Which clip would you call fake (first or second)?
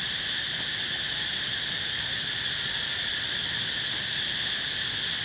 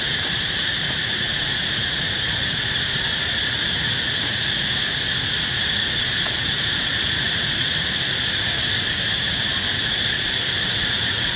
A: second